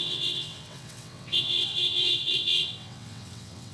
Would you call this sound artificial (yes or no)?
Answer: yes